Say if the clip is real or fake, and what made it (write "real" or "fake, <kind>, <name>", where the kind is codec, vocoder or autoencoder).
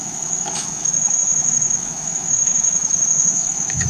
fake, autoencoder, DAC-VAE